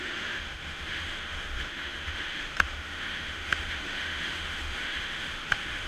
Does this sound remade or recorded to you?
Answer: remade